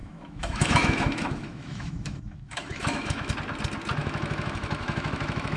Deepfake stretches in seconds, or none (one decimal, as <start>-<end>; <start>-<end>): 0.0-3.3; 4.0-5.6